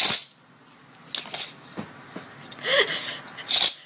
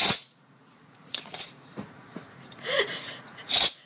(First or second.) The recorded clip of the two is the first